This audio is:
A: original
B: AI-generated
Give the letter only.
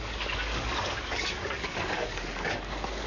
B